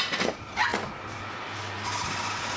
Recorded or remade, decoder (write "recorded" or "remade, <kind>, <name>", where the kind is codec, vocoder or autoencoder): recorded